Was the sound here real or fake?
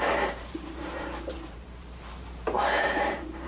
fake